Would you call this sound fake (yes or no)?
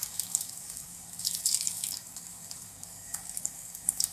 yes